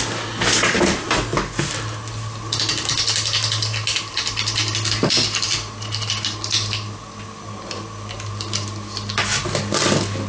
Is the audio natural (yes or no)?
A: yes